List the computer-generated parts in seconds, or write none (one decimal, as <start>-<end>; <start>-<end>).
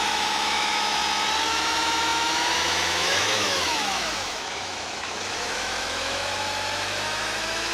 0.0-1.0; 1.5-7.7